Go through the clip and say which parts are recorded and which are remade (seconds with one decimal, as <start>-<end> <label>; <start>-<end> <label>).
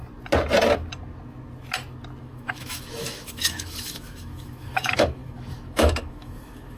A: 0.0-2.2 recorded; 2.2-6.8 remade